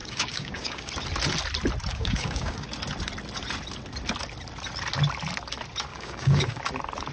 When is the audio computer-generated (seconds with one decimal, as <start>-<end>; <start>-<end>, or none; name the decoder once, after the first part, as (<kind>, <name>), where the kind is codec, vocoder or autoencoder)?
0.0-0.9 (codec, DAC); 1.9-2.7; 5.9-6.6